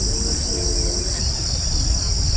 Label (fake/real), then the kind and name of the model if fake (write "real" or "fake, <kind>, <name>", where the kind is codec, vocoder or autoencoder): real